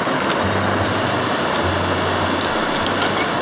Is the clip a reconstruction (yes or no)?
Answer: no